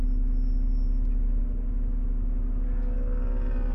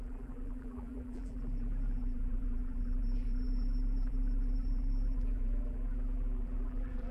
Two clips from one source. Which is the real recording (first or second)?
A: first